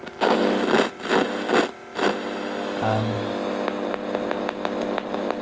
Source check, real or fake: real